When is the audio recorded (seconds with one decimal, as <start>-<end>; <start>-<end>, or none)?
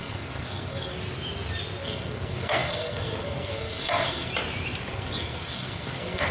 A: 0.9-1.8; 4.3-4.9